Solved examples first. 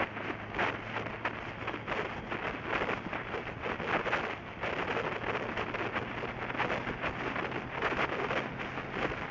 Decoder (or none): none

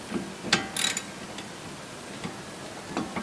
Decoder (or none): none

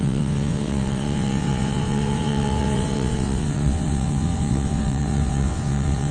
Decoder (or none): vocoder, WaveNeXt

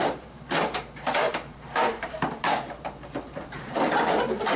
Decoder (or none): vocoder, BigVGAN v2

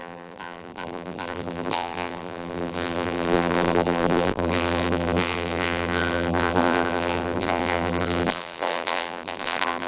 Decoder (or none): vocoder, BigVGAN v2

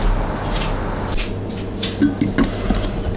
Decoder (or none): none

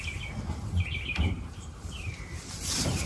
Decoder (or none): vocoder, BigVGAN v2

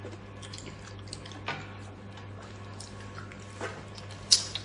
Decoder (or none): none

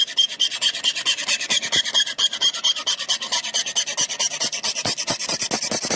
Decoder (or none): none